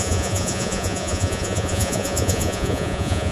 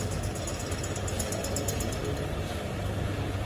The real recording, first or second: second